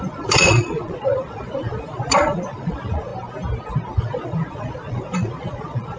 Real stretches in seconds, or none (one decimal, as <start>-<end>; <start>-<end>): 3.1-4.0